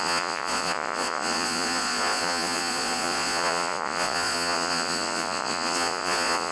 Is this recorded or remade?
remade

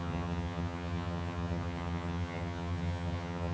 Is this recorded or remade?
remade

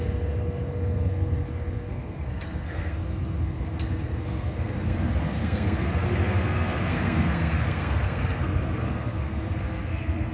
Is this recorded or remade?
remade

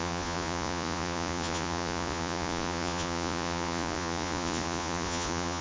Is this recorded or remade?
remade